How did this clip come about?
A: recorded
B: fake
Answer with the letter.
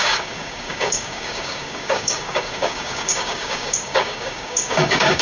B